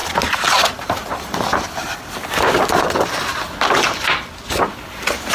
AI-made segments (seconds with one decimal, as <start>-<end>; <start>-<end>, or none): none